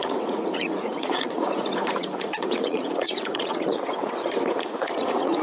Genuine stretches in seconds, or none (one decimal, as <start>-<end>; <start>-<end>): 4.0-4.5